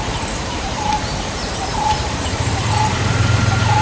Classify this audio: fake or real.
fake